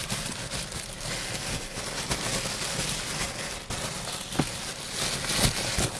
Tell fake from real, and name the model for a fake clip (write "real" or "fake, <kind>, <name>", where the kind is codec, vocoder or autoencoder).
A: real